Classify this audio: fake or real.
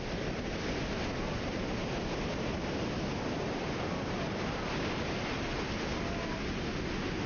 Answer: real